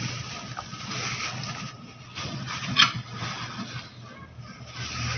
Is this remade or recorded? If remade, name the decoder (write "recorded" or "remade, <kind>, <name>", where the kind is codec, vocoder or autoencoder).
recorded